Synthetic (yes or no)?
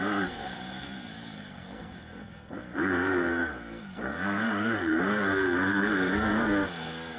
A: yes